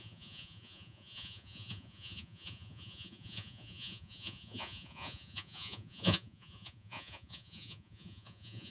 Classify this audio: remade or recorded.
remade